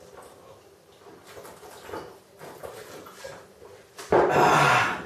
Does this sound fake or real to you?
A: real